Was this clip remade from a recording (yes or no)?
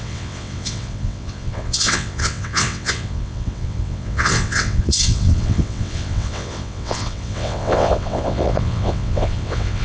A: yes